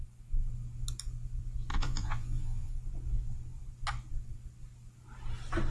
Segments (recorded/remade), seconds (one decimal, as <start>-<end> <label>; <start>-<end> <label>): 0.0-1.7 recorded; 1.7-2.7 remade; 2.7-5.7 recorded